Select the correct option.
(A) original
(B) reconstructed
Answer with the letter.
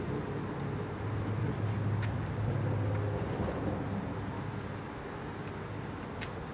A